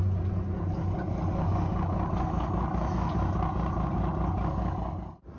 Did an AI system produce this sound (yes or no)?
no